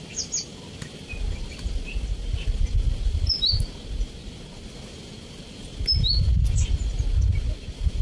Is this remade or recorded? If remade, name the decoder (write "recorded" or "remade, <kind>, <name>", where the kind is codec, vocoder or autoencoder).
recorded